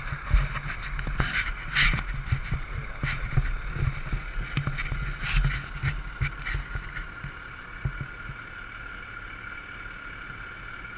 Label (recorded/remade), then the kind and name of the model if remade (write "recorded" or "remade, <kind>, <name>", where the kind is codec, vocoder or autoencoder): recorded